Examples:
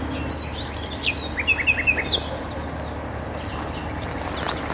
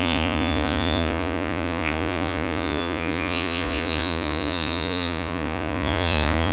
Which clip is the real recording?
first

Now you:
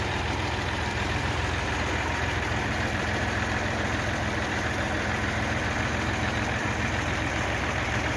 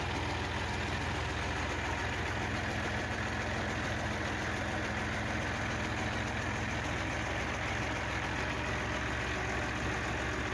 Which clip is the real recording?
second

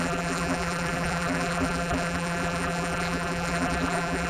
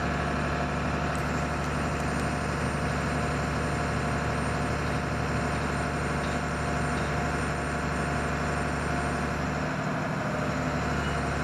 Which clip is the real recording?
second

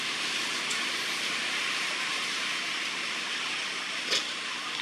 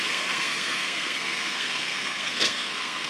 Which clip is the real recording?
first